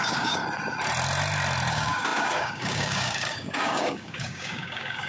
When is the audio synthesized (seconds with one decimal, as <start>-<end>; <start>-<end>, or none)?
0.0-0.4; 1.7-5.1